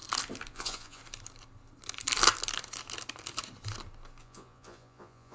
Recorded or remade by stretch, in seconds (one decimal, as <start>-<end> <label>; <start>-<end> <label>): 0.0-0.5 recorded; 0.5-1.0 remade; 1.0-4.2 recorded; 4.2-5.3 remade